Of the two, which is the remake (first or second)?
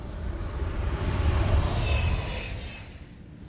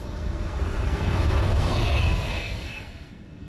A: second